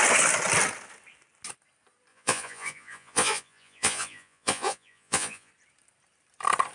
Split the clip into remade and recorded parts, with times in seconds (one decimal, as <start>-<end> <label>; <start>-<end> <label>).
0.0-2.1 recorded; 2.1-5.5 remade; 5.5-6.7 recorded